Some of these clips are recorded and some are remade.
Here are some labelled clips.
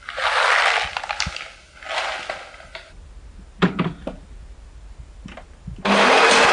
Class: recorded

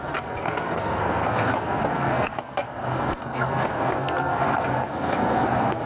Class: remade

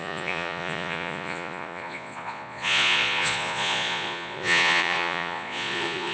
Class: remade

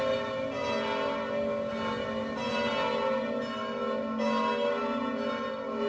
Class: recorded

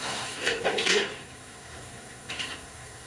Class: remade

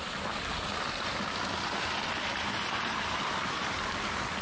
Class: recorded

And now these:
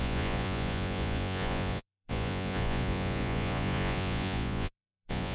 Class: remade